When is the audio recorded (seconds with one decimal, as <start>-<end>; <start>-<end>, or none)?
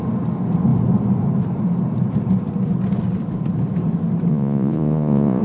0.0-4.3